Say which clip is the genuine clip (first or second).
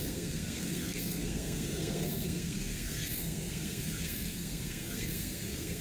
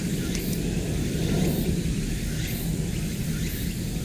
second